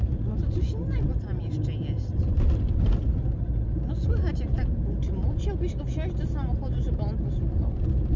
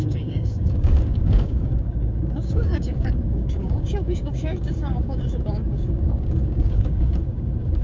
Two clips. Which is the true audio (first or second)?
first